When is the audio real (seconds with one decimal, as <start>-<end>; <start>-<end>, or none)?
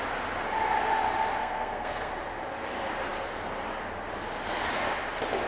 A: 0.0-1.4; 2.1-5.5